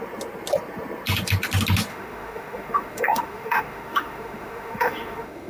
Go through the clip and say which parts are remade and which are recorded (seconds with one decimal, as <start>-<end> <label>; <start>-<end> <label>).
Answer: 0.0-1.9 recorded; 1.9-5.5 remade